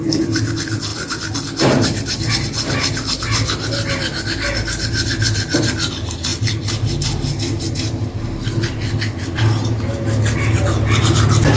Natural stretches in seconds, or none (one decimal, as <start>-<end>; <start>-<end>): 0.0-11.6